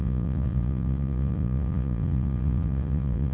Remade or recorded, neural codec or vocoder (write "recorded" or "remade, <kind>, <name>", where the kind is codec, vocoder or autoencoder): remade, vocoder, Vocos